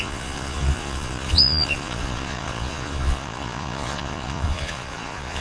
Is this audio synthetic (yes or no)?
yes